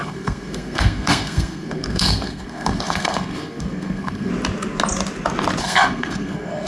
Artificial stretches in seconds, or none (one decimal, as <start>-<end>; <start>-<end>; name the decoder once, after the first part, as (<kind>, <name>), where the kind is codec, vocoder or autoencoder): 0.0-4.3 (codec, SNAC); 5.6-6.7